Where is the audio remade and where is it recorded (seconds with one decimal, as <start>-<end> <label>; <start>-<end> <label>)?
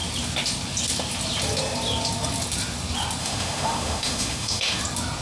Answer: 0.0-3.2 recorded; 3.2-4.8 remade; 4.8-5.2 recorded